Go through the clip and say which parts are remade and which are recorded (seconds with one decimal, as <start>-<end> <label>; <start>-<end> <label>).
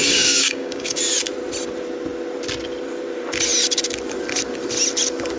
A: 0.0-1.0 remade; 1.0-5.4 recorded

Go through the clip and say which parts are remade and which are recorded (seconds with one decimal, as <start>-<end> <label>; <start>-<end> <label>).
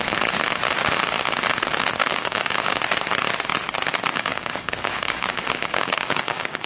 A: 0.0-2.0 recorded; 2.0-2.8 remade; 2.8-4.1 recorded; 4.1-6.7 remade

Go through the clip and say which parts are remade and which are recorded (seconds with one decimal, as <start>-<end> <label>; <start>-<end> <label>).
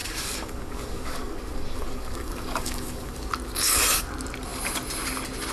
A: 0.0-3.3 remade; 3.3-5.5 recorded